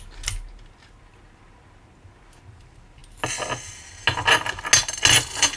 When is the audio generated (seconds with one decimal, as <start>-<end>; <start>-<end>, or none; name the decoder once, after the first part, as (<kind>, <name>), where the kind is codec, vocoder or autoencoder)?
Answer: none